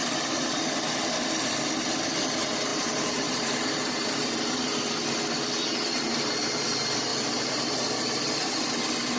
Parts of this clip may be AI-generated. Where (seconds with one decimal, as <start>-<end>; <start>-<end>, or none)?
2.7-4.3; 7.1-8.2